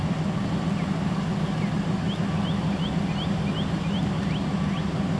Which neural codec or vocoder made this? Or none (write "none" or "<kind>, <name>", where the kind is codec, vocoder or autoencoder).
none